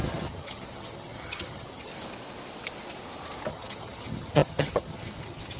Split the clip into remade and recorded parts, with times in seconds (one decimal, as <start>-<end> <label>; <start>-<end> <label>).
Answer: 0.0-1.9 remade; 1.9-3.5 recorded; 3.5-5.6 remade